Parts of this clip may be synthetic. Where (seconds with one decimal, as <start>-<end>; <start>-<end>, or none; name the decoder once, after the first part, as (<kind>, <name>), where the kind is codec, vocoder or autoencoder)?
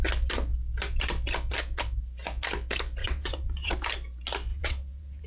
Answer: 3.0-3.7 (vocoder, WaveNeXt); 4.5-5.3